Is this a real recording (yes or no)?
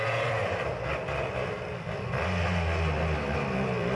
yes